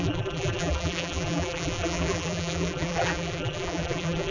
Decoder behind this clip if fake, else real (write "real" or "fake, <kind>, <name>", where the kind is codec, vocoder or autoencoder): fake, vocoder, BigVGAN v2